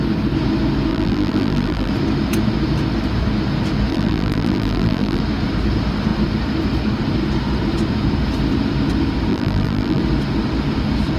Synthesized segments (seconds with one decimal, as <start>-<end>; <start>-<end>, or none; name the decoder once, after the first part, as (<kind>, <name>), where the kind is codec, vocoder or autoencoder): 0.9-1.9 (vocoder, BigVGAN v2); 3.9-5.2; 9.3-10.0